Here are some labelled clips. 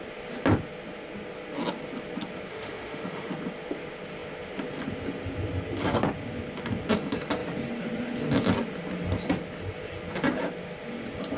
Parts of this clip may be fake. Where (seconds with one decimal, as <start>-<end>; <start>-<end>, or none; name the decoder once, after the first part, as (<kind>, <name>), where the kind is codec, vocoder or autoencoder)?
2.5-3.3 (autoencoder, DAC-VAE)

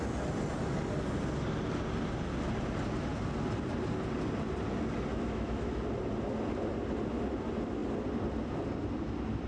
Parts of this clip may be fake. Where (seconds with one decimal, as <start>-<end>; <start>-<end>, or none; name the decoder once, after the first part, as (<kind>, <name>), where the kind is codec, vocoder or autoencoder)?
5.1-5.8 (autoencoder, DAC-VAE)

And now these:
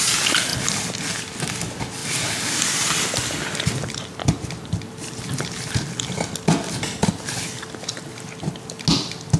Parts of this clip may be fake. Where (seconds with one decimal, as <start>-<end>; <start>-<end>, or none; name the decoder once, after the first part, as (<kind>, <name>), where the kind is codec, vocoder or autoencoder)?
none

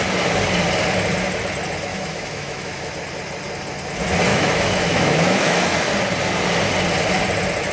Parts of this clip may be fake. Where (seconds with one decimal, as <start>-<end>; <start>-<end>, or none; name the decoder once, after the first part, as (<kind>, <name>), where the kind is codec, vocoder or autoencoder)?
1.9-2.9 (autoencoder, DAC-VAE); 4.3-5.9